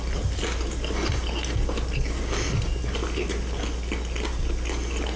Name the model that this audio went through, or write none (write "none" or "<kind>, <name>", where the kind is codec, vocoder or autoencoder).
none